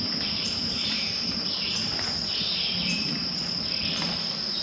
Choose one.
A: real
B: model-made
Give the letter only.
A